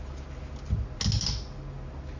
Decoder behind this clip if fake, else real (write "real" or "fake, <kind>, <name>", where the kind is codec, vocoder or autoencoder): real